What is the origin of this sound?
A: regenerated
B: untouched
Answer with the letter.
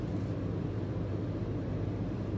B